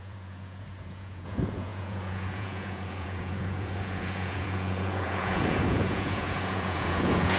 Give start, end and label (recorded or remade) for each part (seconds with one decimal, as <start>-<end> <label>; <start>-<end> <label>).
0.0-7.4 remade